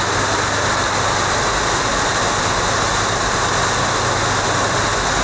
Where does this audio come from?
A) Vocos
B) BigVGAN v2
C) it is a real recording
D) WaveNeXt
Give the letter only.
C